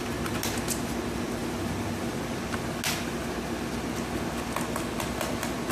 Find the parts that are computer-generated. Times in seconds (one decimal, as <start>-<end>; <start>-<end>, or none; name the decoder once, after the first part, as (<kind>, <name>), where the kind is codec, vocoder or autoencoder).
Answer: none